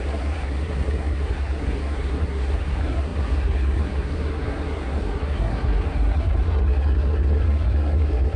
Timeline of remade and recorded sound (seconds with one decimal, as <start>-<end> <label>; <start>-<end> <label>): 0.0-8.4 remade